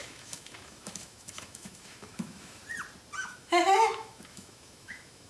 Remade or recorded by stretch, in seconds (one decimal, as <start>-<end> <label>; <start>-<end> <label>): 0.0-2.6 remade; 2.6-3.2 recorded; 3.2-5.3 remade